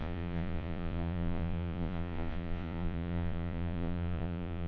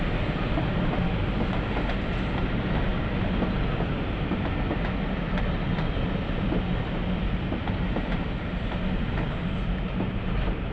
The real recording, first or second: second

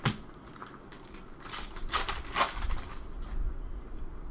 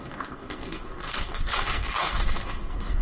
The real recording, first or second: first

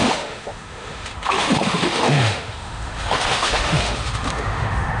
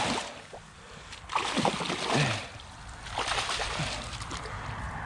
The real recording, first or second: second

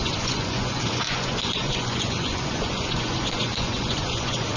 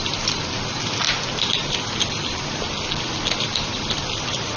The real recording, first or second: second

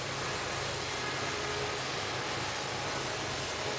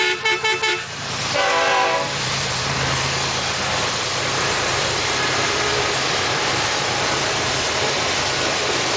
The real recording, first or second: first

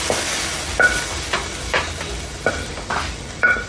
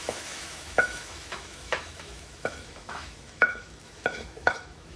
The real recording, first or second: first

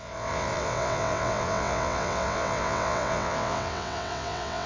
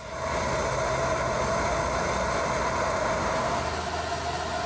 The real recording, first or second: second